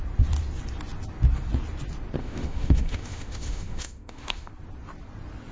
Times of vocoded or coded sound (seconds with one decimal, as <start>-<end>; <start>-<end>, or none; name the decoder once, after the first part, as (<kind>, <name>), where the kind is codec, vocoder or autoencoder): 2.2-4.5 (autoencoder, DAC-VAE)